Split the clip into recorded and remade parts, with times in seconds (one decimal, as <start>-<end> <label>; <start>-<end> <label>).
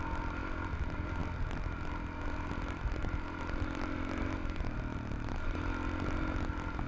0.0-6.9 recorded